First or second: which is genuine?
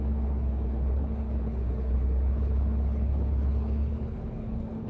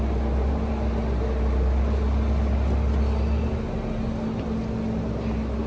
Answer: second